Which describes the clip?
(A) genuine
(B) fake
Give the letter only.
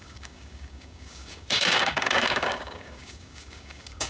B